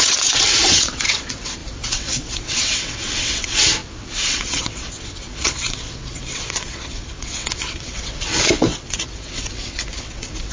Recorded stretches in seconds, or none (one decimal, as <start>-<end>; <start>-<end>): none